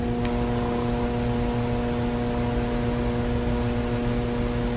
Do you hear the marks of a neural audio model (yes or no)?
no